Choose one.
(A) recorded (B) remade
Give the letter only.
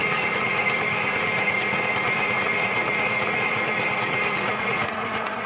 B